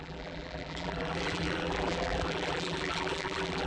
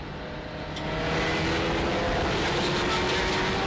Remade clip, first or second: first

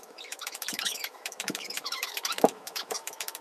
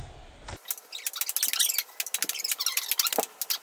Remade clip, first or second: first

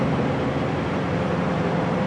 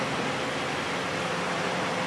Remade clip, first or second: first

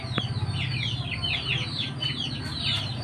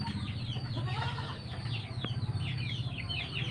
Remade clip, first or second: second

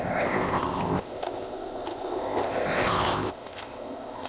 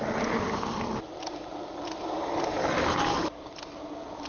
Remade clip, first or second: first